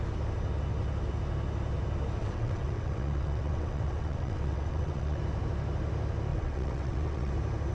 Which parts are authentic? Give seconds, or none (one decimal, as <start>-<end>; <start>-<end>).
0.0-2.2; 5.2-6.3; 7.3-7.7